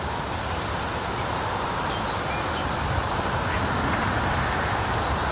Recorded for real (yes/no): yes